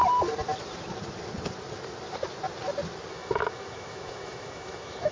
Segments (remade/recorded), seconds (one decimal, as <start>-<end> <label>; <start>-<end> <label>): 0.0-3.1 recorded; 3.1-5.1 remade